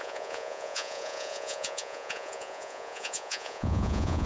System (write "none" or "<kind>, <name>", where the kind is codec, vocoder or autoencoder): vocoder, Vocos